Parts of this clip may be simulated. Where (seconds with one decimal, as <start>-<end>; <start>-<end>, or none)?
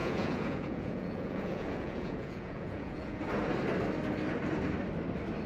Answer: 0.0-3.2